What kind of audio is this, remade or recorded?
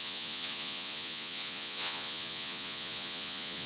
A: remade